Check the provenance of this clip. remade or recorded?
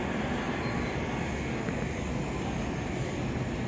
recorded